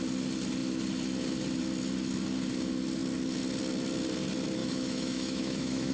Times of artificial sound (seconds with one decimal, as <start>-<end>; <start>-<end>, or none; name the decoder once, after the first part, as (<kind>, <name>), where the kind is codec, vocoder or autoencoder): 4.6-5.9 (autoencoder, DAC-VAE)